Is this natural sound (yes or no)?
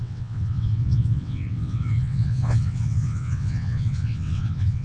no